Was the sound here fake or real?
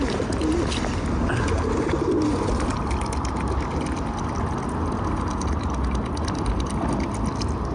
real